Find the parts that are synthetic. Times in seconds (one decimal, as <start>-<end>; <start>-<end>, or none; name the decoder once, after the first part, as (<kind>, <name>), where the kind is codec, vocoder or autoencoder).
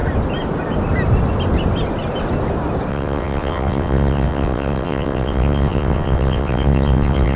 2.9-7.4 (vocoder, WaveNeXt)